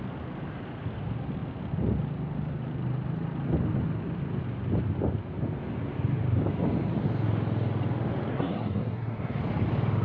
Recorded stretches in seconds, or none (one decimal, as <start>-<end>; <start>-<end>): 0.0-8.3; 9.4-10.0